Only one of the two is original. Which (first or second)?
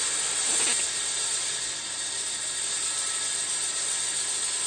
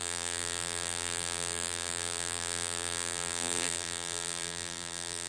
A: first